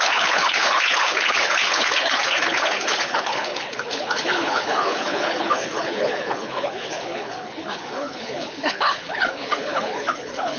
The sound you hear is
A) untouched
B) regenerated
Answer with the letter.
B